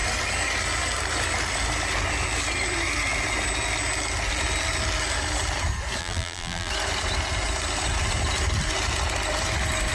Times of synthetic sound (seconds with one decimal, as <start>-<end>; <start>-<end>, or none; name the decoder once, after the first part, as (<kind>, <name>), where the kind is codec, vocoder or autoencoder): 6.0-6.7 (vocoder, BigVGAN v2)